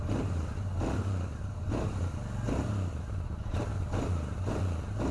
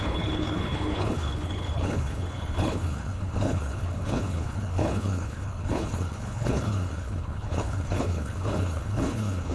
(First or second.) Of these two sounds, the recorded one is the first